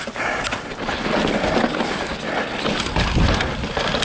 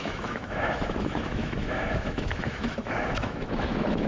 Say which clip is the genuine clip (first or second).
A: first